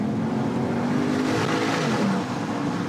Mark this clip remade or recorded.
recorded